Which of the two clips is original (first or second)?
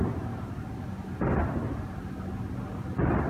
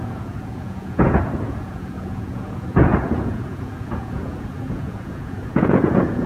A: first